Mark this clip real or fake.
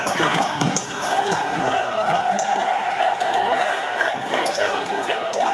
fake